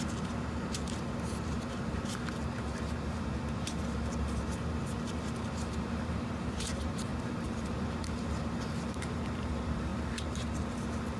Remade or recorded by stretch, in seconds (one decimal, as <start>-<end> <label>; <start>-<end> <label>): 0.0-11.2 remade